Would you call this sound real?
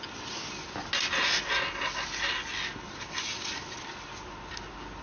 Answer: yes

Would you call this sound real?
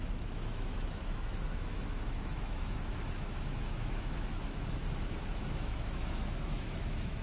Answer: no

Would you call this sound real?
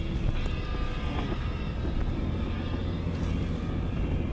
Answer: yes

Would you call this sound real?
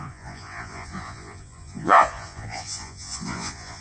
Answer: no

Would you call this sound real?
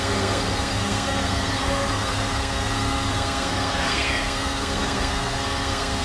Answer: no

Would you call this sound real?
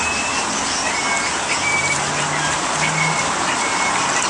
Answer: yes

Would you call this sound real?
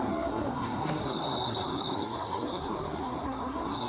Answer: no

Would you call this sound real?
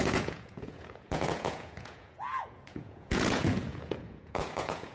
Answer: no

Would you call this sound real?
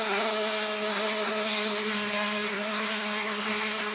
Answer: no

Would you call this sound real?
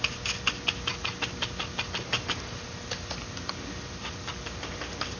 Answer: yes